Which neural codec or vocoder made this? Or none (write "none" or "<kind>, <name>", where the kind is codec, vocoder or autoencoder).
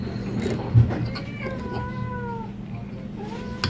none